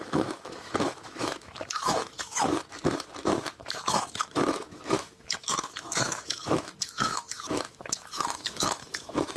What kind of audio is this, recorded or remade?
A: remade